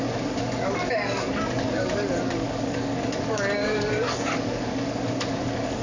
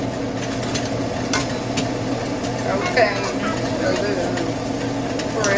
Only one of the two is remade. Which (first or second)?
first